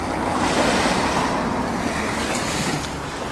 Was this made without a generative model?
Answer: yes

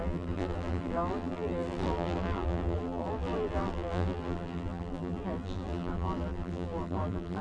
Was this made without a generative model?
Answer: no